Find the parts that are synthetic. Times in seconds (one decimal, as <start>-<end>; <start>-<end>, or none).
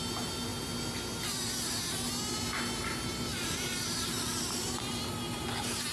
3.3-4.8